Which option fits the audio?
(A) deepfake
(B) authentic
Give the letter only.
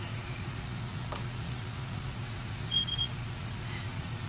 A